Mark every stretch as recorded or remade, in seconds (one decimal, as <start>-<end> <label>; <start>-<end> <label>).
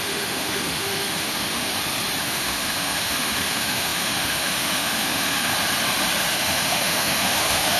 0.0-1.7 remade; 1.7-2.2 recorded; 2.2-5.5 remade; 5.5-6.3 recorded; 6.3-7.8 remade